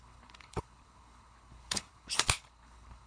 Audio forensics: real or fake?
fake